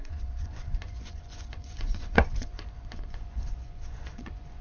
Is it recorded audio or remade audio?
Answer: remade